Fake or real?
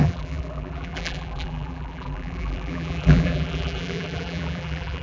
fake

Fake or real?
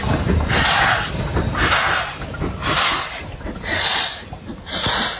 real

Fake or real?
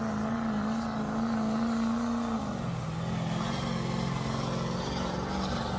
real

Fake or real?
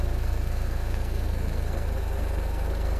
fake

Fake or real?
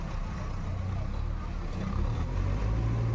real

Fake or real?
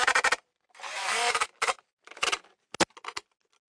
real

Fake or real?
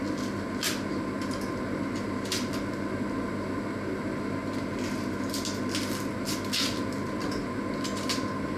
real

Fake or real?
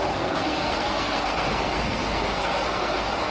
fake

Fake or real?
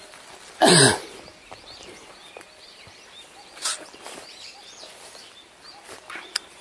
fake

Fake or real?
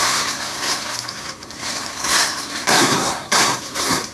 fake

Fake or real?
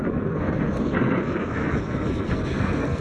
fake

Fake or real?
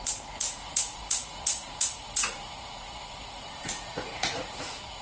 fake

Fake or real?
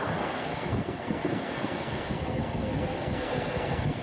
fake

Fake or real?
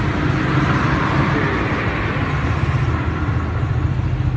real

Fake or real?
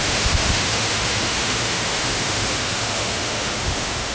fake